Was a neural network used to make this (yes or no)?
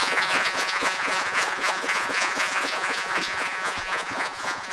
yes